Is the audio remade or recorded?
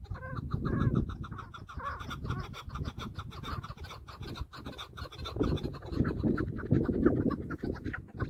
recorded